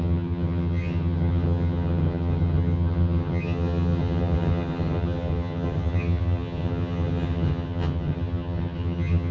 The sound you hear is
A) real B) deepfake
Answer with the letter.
B